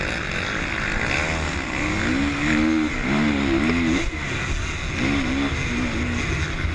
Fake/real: real